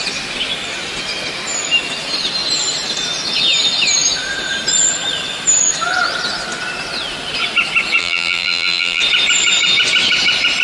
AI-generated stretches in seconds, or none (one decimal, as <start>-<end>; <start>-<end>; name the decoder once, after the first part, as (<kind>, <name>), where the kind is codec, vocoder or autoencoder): 8.0-9.0 (vocoder, BigVGAN v2)